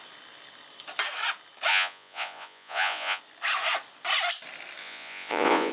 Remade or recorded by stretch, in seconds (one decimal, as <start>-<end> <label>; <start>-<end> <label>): 0.0-1.7 recorded; 1.7-3.2 remade; 3.2-4.8 recorded; 4.8-5.7 remade